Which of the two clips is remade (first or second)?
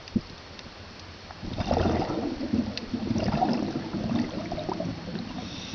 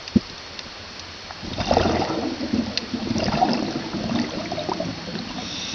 first